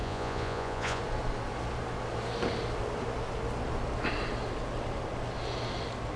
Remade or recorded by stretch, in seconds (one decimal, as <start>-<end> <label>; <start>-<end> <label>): 0.0-1.0 remade; 1.0-6.2 recorded